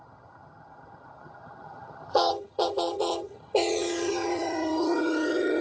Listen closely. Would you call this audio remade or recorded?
remade